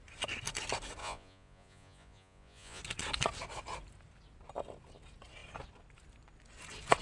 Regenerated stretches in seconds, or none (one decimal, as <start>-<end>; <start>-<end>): 1.0-2.8